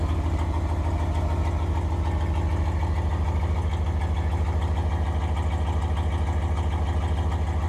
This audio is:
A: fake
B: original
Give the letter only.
B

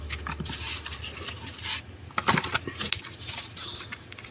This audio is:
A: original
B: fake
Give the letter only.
A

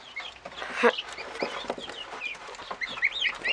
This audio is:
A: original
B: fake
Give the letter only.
A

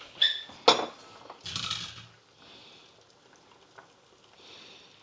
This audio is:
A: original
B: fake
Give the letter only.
A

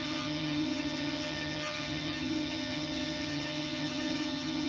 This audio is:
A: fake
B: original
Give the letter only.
A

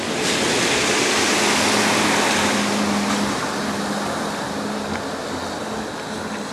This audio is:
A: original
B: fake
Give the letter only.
A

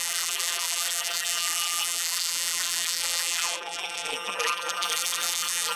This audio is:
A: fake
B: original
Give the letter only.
A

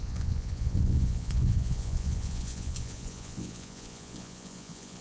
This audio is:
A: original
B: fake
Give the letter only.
B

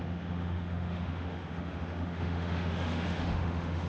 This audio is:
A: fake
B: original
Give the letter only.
A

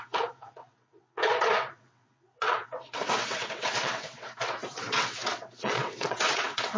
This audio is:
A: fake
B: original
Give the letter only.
A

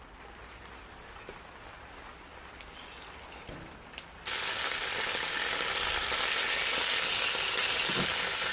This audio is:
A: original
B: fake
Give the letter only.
A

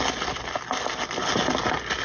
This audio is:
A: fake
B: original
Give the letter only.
B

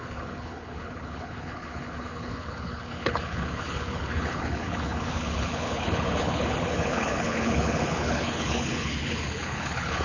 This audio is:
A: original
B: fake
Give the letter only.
B